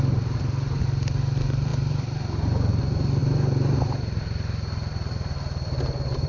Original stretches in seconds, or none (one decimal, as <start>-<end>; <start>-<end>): 0.0-6.3